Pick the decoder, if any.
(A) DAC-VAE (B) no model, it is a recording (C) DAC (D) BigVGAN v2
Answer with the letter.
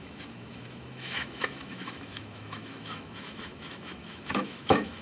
A